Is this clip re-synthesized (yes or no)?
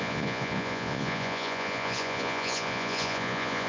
yes